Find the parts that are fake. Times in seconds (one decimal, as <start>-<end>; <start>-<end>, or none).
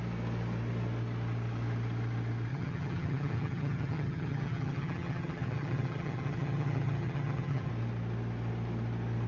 2.5-7.7